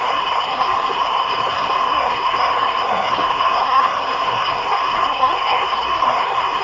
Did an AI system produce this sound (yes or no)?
yes